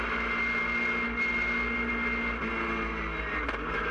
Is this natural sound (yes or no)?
yes